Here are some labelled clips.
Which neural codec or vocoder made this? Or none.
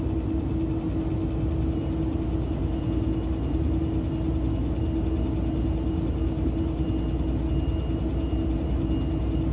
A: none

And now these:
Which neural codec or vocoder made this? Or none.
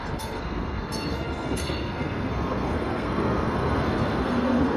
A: codec, SNAC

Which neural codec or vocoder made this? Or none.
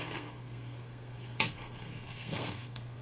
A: codec, SNAC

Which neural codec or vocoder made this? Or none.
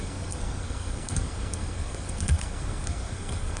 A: codec, SNAC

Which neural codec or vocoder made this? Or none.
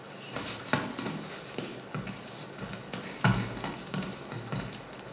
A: none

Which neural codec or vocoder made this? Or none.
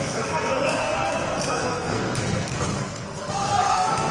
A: codec, SNAC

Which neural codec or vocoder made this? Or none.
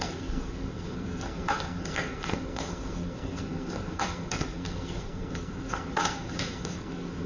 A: codec, SNAC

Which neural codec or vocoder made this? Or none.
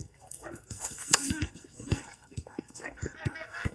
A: codec, SNAC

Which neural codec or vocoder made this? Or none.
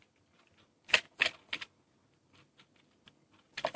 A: none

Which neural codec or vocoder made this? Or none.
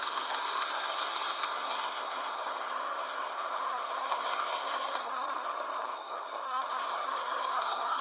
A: codec, SNAC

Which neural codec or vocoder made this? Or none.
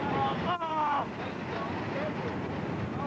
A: none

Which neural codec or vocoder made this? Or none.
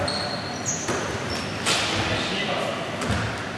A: none